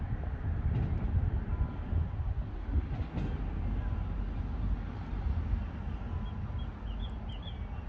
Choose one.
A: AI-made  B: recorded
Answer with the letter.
B